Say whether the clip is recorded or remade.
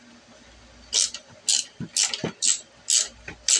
recorded